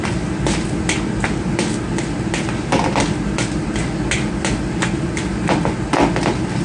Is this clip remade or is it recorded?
recorded